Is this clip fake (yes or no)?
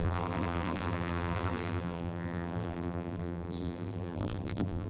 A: yes